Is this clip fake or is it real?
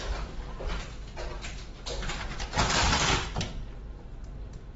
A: real